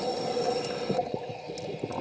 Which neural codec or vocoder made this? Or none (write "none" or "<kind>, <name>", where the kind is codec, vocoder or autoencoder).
none